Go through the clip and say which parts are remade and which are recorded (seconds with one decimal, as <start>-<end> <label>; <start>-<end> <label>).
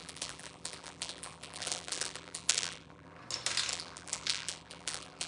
0.0-3.2 remade; 3.2-3.7 recorded; 3.7-5.3 remade